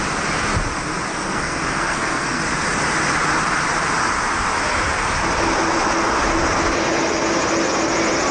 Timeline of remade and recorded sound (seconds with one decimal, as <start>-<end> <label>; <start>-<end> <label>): 0.0-1.1 recorded; 1.1-2.4 remade; 2.4-8.3 recorded